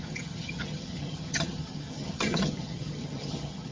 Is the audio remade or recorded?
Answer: remade